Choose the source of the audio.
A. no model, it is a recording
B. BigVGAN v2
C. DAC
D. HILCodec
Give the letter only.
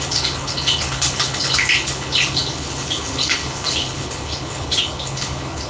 D